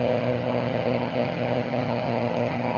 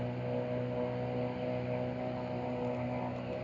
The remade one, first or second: first